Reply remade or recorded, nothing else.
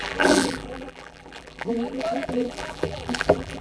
remade